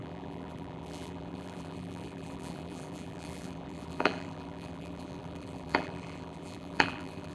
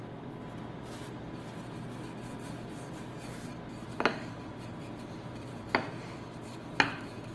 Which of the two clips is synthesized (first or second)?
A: first